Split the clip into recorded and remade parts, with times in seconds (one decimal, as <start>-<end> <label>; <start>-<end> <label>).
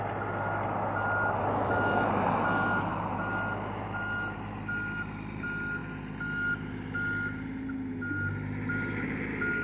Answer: 0.0-9.6 recorded